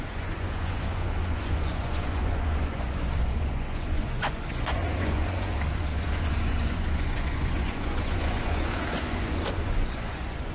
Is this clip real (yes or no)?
no